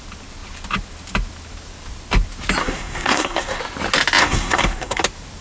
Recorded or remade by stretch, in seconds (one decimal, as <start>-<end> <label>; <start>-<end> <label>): 0.0-2.6 recorded; 2.6-3.6 remade; 3.6-4.2 recorded; 4.2-5.0 remade; 5.0-5.4 recorded

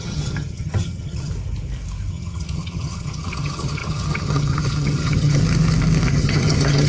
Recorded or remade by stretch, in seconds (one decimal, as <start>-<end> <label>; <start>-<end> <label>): 0.0-1.3 remade; 1.3-2.1 recorded; 2.1-5.4 remade; 5.4-6.1 recorded; 6.1-6.9 remade

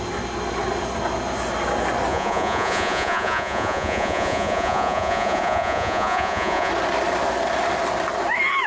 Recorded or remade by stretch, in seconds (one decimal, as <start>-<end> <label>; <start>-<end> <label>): 0.0-2.1 recorded; 2.1-6.7 remade; 6.7-8.7 recorded

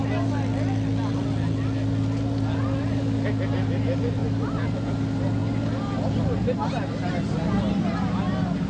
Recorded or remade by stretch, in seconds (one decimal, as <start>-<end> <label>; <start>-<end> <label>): 0.0-8.7 recorded

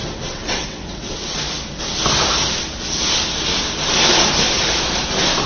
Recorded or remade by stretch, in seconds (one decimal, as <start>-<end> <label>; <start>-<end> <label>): 0.0-1.4 remade; 1.4-5.5 recorded